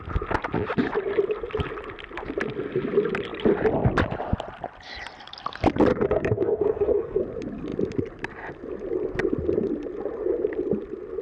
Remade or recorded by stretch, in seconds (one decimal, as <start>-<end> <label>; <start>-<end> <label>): 0.0-5.9 recorded; 5.9-7.2 remade; 7.2-11.2 recorded